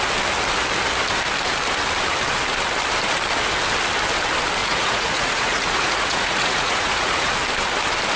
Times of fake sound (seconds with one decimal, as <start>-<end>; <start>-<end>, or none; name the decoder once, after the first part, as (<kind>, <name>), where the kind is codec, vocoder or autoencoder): 4.6-7.3 (vocoder, Vocos)